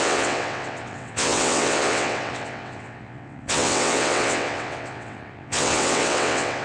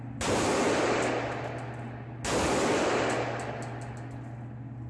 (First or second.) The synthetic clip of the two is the first